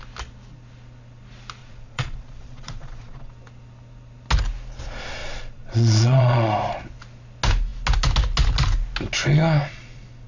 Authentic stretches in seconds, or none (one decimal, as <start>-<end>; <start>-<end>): 0.0-1.6; 3.3-5.2; 6.5-10.3